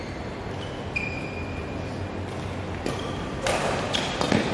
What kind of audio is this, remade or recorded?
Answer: recorded